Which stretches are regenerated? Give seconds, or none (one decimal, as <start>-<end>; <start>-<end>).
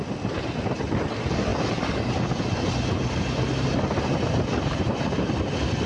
none